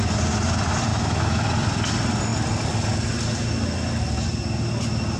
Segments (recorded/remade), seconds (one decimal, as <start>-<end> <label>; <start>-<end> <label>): 0.0-0.9 recorded; 0.9-1.4 remade; 1.4-5.2 recorded